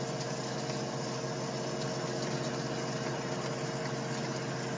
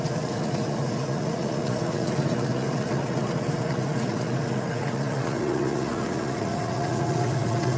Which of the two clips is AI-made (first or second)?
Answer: second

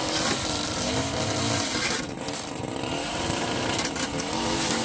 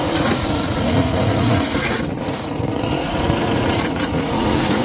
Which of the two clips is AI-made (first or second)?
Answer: second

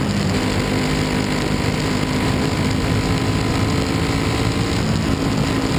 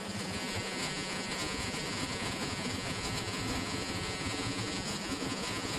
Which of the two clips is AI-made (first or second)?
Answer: second